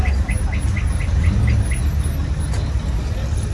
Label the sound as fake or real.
real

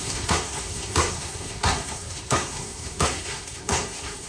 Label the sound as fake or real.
fake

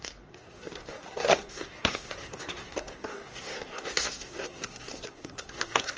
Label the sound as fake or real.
fake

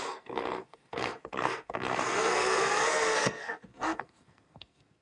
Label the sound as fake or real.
fake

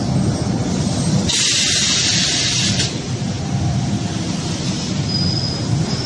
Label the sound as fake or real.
real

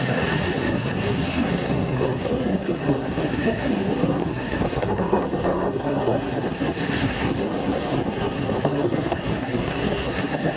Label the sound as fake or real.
fake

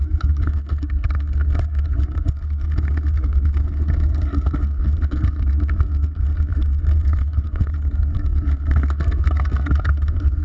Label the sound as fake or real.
fake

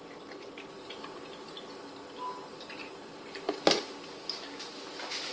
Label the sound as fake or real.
real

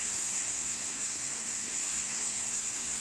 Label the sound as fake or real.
fake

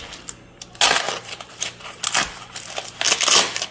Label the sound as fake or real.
real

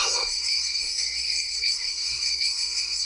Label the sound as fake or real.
fake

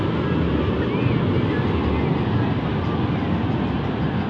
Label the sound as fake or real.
real